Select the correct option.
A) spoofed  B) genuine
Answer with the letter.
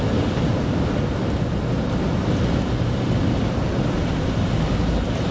B